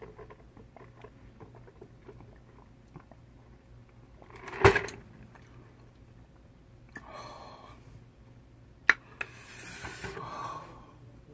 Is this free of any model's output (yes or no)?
yes